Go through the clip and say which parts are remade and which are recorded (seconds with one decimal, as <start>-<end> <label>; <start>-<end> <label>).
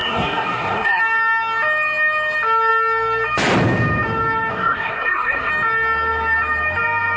0.0-1.0 remade; 1.0-4.5 recorded; 4.5-5.5 remade; 5.5-7.2 recorded